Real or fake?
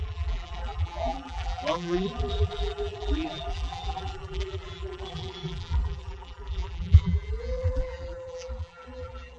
fake